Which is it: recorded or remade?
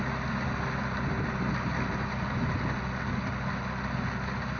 recorded